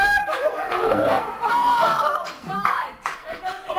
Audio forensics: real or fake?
fake